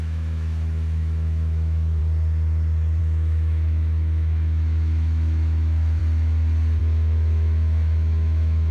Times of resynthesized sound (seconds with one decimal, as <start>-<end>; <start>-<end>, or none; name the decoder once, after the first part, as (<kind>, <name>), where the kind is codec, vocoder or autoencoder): 0.0-2.0 (autoencoder, DAC-VAE); 3.0-6.0; 6.8-8.7